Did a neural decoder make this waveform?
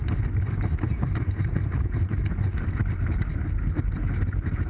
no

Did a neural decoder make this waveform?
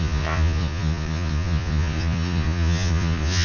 yes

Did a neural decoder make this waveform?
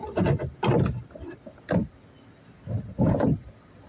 no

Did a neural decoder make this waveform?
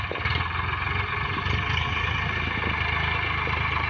no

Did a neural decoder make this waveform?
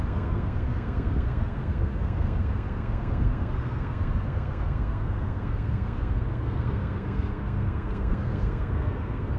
yes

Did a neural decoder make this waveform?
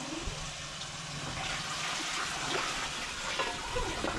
no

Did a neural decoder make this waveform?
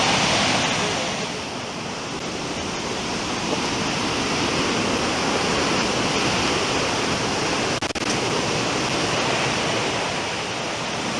no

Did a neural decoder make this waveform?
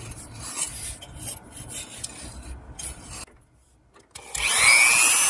no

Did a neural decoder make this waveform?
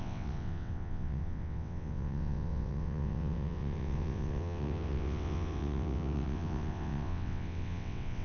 yes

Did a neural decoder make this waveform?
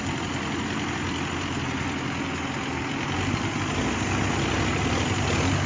no